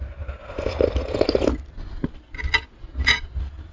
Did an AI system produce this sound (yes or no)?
no